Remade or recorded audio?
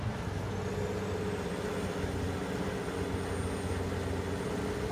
recorded